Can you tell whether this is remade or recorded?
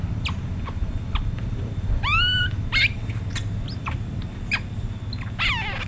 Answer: recorded